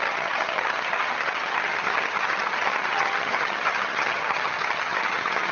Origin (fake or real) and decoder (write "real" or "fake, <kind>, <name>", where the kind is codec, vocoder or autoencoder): fake, vocoder, HiFi-GAN